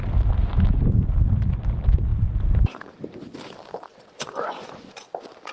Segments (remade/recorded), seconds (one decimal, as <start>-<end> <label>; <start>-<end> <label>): 0.0-3.9 recorded; 3.9-4.9 remade; 4.9-5.5 recorded